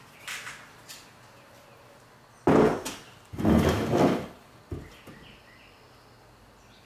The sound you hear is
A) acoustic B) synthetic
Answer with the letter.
A